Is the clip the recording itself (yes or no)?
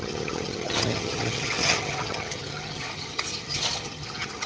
no